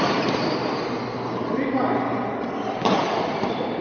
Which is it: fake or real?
real